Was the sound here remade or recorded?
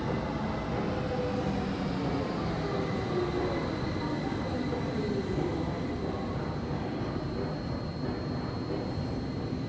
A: recorded